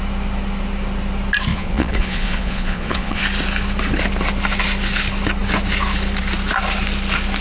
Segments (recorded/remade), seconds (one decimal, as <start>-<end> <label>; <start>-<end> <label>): 0.0-1.5 recorded; 1.5-3.2 remade; 3.2-7.4 recorded